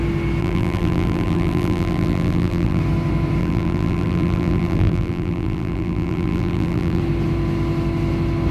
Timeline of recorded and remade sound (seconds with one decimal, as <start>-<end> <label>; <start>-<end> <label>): 0.0-0.4 recorded; 0.4-2.8 remade; 2.8-3.4 recorded; 3.4-7.0 remade; 7.0-8.5 recorded